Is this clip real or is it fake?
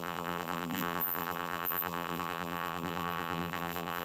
fake